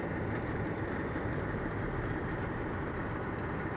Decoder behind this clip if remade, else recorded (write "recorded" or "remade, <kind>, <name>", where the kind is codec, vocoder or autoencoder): recorded